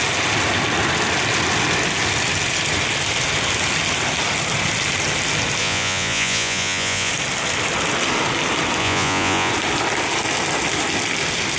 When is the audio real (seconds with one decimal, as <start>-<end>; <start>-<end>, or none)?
0.0-5.6; 7.1-8.8; 9.5-11.6